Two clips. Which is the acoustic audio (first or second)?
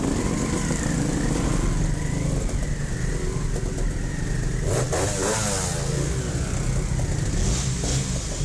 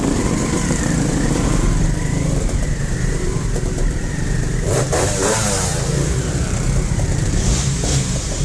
first